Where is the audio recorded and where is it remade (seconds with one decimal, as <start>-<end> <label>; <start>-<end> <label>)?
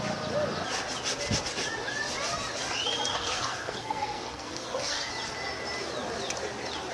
0.0-3.1 recorded; 3.1-5.1 remade; 5.1-6.9 recorded